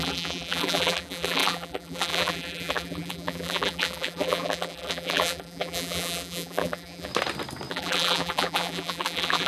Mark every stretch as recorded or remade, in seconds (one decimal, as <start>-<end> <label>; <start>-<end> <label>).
0.0-7.1 remade; 7.1-7.7 recorded; 7.7-9.5 remade